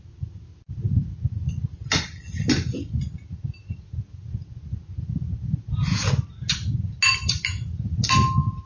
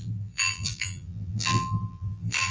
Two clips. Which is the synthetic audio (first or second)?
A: second